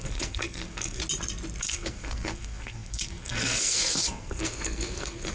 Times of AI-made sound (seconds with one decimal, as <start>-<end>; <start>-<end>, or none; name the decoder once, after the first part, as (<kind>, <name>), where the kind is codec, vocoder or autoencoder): 0.0-1.0 (codec, SNAC); 1.6-5.3